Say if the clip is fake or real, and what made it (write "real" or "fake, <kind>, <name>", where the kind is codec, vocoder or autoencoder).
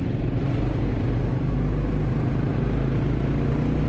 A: real